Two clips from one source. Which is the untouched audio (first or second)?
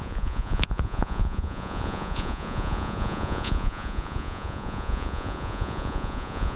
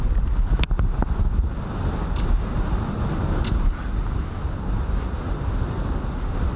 second